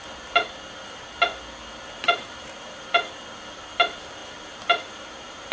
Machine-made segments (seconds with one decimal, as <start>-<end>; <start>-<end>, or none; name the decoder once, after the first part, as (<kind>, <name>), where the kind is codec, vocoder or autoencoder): 2.0-3.2 (vocoder, BigVGAN v2); 4.2-5.5